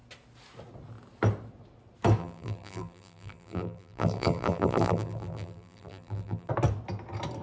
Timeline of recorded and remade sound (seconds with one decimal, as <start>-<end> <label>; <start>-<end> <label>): 0.0-2.2 recorded; 2.2-6.5 remade; 6.5-7.4 recorded